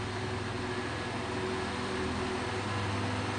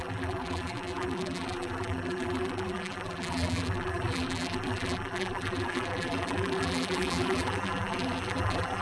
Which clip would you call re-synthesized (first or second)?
second